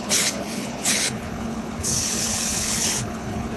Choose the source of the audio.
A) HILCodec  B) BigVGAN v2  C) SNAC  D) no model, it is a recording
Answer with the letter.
A